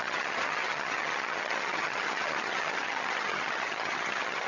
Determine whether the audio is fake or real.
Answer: fake